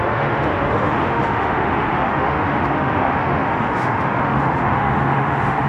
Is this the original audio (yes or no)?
no